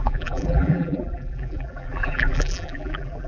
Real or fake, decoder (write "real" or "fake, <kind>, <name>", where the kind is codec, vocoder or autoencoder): fake, vocoder, BigVGAN v2